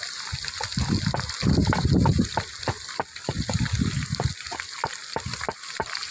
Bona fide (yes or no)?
yes